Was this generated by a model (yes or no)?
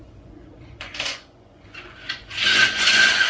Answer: yes